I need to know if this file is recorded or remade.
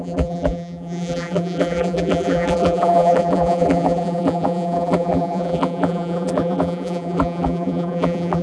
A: remade